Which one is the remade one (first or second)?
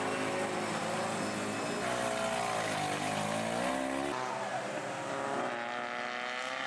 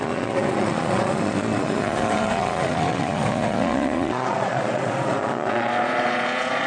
second